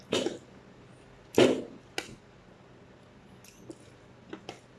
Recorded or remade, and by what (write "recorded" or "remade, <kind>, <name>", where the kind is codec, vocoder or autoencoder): recorded